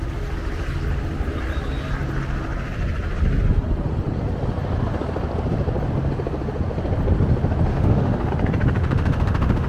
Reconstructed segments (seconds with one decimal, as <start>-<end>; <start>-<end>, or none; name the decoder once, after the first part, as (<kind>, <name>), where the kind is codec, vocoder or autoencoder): 7.7-8.3 (autoencoder, DAC-VAE); 8.8-9.7